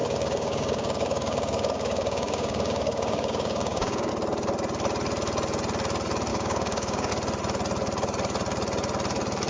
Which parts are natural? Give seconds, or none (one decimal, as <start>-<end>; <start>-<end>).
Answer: 4.1-6.3; 7.1-9.5